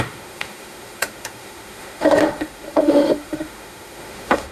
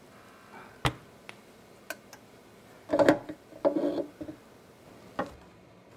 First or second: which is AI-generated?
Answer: first